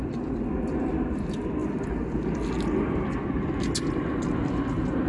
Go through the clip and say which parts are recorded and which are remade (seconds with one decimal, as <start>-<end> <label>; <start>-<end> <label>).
0.0-5.1 recorded